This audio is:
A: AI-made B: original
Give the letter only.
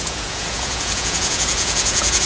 A